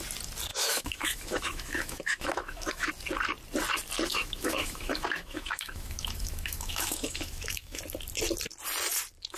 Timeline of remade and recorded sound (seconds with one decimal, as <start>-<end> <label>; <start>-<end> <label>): 0.0-0.5 recorded; 0.5-2.9 remade; 2.9-4.1 recorded; 4.1-7.8 remade; 7.8-9.4 recorded